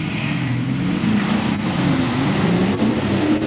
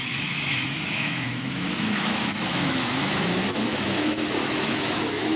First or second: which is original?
first